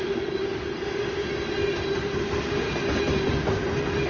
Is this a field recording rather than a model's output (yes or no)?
yes